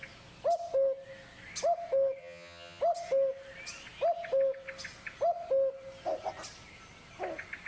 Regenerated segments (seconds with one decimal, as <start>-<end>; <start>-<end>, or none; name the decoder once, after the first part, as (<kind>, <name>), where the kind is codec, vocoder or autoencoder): 2.2-2.8 (vocoder, HiFi-GAN)

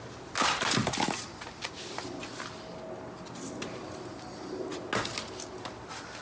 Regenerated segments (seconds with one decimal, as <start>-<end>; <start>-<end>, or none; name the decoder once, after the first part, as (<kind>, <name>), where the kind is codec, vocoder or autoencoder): none